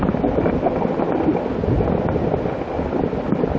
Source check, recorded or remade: recorded